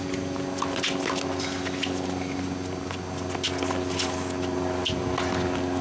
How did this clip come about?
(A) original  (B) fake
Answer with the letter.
A